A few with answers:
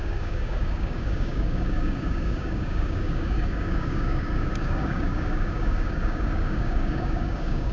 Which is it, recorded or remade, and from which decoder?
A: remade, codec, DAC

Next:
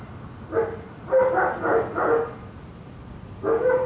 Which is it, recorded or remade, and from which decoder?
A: recorded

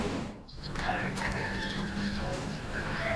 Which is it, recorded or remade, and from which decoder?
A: remade, codec, DAC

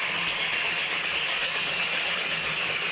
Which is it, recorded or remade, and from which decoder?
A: remade, codec, DAC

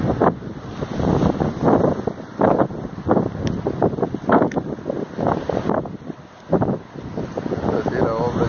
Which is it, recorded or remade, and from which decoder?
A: recorded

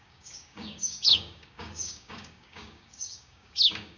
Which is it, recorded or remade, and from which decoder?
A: remade, codec, DAC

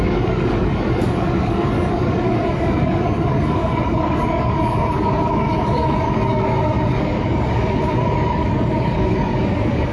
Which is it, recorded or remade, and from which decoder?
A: remade, codec, DAC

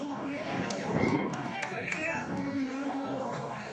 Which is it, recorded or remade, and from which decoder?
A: remade, codec, DAC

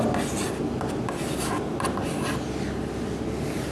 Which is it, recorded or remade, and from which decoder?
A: recorded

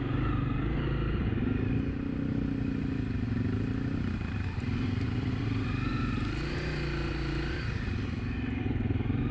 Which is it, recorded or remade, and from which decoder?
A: recorded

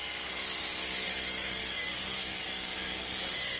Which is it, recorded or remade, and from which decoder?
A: remade, codec, DAC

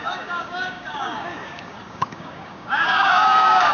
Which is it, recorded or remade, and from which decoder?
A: remade, codec, DAC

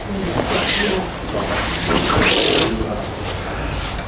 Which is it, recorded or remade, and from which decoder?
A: recorded